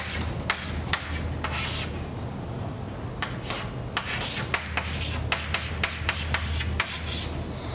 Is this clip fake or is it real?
real